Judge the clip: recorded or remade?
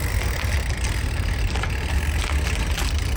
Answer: recorded